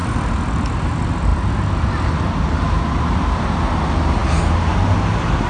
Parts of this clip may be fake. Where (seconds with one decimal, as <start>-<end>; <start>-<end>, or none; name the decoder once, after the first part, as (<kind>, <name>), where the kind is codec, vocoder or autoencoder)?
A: none